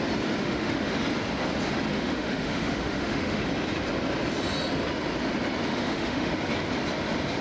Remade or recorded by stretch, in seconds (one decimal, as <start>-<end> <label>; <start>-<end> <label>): 0.0-0.4 recorded; 0.4-0.9 remade; 0.9-1.9 recorded; 1.9-3.4 remade; 3.4-5.7 recorded; 5.7-6.3 remade; 6.3-7.4 recorded